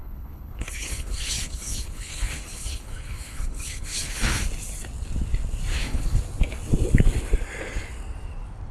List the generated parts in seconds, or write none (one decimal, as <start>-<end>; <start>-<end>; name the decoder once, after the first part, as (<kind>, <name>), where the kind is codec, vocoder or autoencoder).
0.0-4.4 (codec, HILCodec); 5.7-6.2